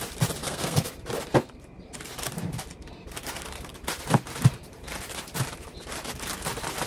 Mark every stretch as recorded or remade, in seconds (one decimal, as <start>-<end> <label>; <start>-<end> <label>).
0.0-0.4 recorded; 0.4-0.9 remade; 0.9-6.9 recorded